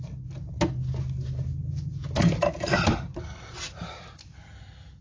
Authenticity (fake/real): real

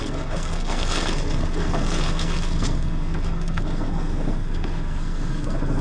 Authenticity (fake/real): fake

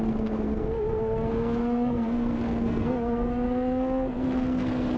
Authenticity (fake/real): fake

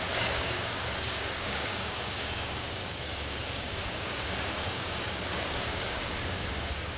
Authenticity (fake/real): fake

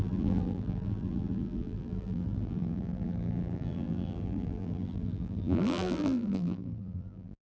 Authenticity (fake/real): fake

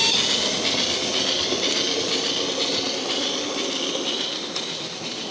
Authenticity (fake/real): real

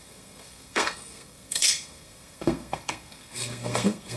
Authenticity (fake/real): fake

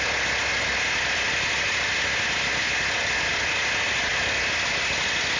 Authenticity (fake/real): real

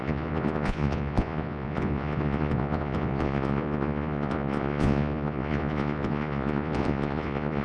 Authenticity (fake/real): fake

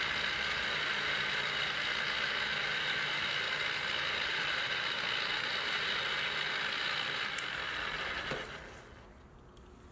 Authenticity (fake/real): real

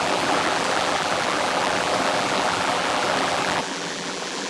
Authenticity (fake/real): fake